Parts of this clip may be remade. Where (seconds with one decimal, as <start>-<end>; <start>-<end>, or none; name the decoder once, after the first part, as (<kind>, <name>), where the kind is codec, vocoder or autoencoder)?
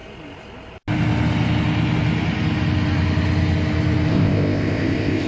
4.1-5.3 (codec, ZipCodec)